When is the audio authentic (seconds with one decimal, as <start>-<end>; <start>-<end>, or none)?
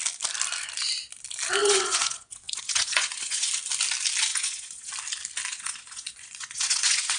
0.0-1.6; 3.5-4.3; 4.9-5.5